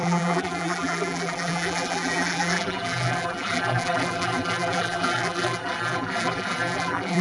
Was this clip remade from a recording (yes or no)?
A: yes